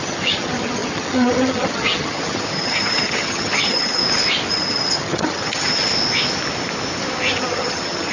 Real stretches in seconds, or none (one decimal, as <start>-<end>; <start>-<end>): 4.0-4.5; 5.8-7.3

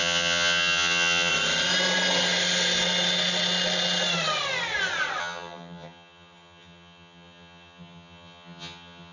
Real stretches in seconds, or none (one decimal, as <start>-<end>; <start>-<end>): 1.3-5.2

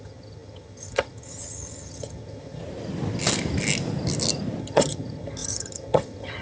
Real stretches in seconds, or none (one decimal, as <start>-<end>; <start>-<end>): 2.6-4.6

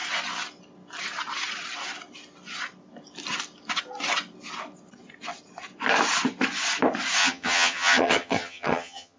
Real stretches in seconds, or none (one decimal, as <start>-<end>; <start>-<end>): 0.0-7.2

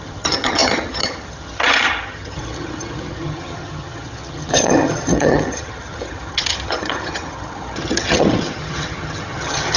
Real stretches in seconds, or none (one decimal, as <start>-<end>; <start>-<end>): none

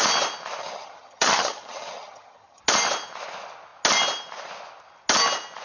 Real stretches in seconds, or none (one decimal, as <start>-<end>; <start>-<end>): 0.0-0.6; 2.6-5.6

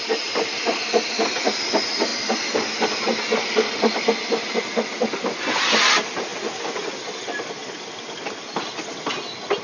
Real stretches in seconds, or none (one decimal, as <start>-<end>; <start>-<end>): 0.0-9.6

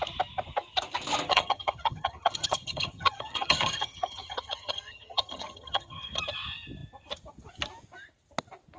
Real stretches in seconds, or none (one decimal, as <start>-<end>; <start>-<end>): 0.0-1.3; 6.2-8.8